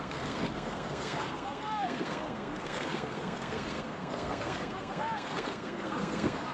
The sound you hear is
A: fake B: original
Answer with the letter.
A